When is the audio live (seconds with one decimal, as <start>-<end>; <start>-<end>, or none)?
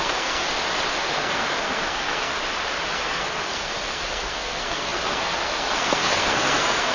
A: 0.5-1.0; 2.3-2.9